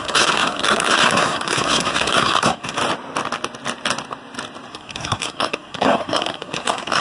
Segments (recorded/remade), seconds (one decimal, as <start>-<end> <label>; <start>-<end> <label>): 0.0-2.8 remade; 2.8-4.7 recorded; 4.7-7.0 remade